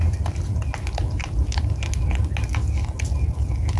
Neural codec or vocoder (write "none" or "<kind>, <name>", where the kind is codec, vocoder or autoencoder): none